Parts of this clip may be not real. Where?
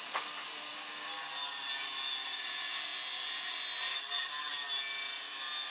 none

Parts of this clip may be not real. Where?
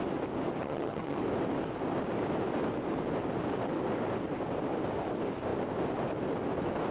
0.6-1.2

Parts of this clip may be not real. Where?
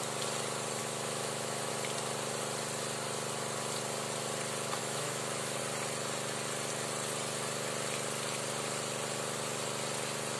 0.8-1.7; 4.8-5.6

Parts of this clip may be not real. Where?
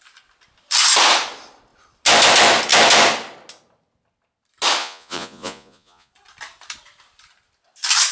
4.8-6.1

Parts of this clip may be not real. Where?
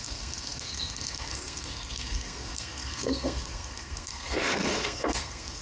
0.0-5.6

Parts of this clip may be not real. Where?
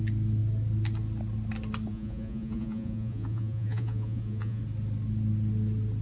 1.9-4.6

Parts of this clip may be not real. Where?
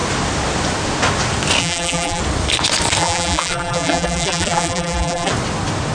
1.6-2.2; 3.0-5.3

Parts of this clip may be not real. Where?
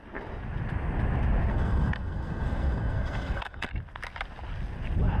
1.5-3.7